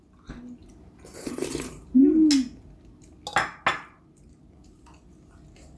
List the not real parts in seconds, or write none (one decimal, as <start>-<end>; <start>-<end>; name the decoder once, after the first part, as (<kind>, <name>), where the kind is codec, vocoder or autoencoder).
0.6-2.0 (vocoder, BigVGAN v2); 3.7-4.4

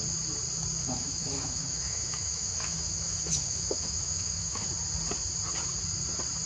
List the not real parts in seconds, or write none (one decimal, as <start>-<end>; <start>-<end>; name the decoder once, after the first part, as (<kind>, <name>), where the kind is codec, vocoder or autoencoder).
0.8-4.7 (autoencoder, DAC-VAE)

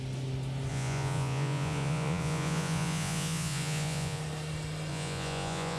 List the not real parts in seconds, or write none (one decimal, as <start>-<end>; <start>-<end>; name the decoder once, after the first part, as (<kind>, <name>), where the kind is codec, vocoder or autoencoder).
0.7-4.2 (vocoder, Vocos); 4.9-5.8

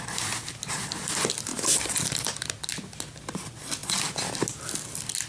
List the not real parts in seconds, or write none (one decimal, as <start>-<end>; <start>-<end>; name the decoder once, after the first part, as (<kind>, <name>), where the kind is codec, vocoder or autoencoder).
1.5-2.3 (vocoder, BigVGAN v2)

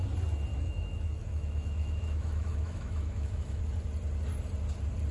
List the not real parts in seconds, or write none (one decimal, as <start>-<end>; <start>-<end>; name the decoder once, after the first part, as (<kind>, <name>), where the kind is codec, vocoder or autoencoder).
0.5-3.6 (autoencoder, DAC-VAE)